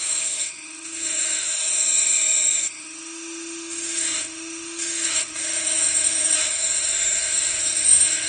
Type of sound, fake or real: fake